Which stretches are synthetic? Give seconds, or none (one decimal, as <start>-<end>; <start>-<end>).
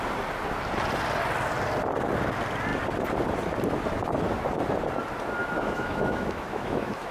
5.4-7.1